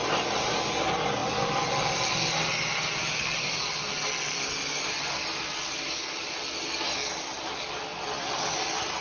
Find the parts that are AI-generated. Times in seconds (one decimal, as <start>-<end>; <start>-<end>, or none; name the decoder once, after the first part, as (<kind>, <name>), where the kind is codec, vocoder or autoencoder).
none

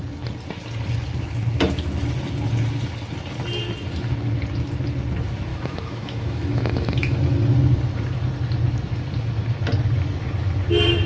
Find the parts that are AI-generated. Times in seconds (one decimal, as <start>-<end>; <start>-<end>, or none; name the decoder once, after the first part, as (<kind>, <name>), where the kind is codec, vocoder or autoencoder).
5.5-7.2 (autoencoder, DAC-VAE)

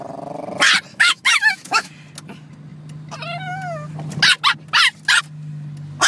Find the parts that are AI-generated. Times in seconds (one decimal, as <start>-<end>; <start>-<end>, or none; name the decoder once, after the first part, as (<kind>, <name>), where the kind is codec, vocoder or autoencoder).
0.9-1.9 (autoencoder, DAC-VAE)

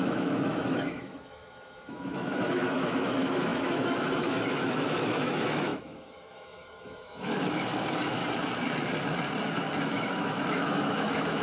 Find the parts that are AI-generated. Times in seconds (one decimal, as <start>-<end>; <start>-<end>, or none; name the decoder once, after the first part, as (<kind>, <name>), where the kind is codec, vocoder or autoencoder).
0.0-8.2 (autoencoder, DAC-VAE); 9.8-11.4